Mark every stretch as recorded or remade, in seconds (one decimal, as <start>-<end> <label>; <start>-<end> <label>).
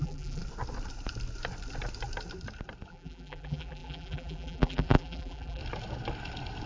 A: 0.0-0.4 remade; 0.4-2.9 recorded; 2.9-5.6 remade; 5.6-6.7 recorded